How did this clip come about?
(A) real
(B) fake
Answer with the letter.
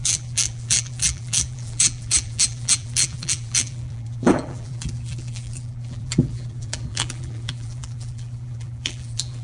B